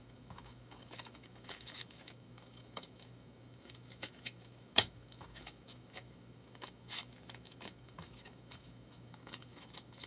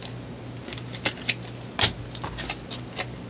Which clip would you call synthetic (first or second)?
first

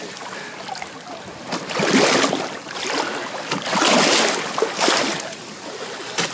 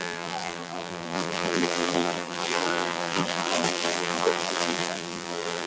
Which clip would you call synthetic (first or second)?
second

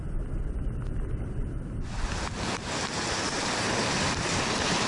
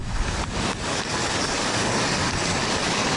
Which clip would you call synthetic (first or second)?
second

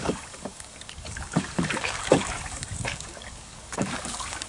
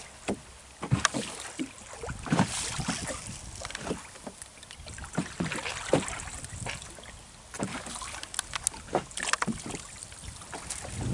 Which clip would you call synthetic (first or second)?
first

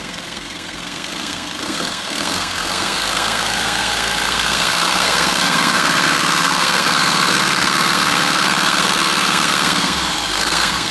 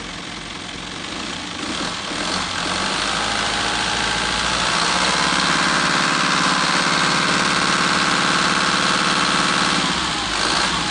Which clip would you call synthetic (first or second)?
first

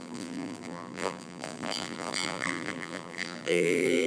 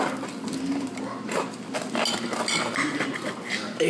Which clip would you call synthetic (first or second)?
first